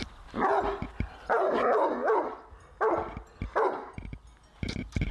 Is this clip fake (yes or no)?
no